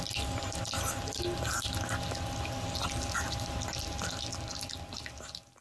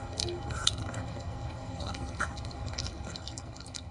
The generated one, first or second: second